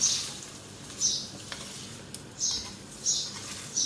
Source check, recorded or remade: recorded